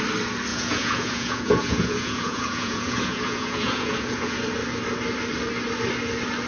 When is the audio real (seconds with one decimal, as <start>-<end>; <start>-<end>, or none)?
0.0-0.5; 4.4-6.5